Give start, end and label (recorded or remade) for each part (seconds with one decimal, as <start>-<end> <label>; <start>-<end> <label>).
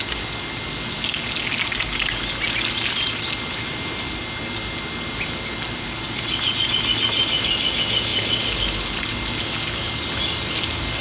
0.0-11.0 recorded